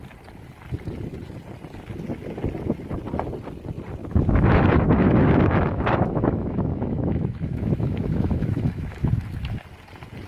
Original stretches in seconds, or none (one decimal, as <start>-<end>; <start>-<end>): 0.0-4.0; 9.1-10.3